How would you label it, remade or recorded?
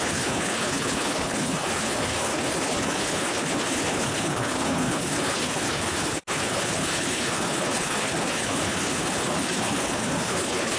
remade